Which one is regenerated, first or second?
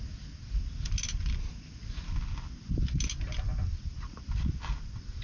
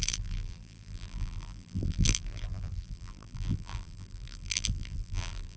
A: second